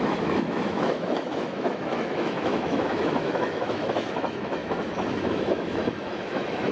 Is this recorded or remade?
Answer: remade